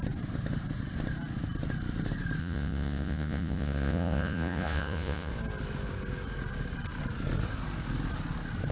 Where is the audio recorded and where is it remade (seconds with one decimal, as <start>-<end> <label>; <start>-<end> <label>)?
0.0-2.4 recorded; 2.4-5.3 remade; 5.3-8.7 recorded